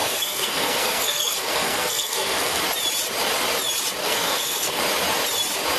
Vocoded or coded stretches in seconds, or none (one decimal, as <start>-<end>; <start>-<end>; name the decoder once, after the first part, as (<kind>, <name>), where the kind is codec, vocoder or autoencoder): 0.0-2.6 (codec, SNAC); 4.0-4.8